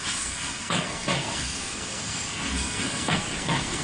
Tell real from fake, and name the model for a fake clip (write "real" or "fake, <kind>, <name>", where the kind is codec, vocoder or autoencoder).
fake, codec, SNAC